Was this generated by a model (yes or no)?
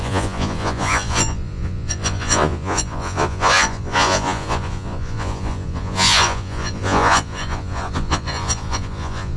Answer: yes